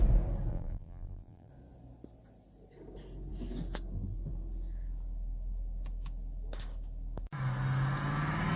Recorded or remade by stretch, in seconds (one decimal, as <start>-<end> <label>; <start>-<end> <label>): 0.0-0.5 recorded; 0.5-1.5 remade; 1.5-8.6 recorded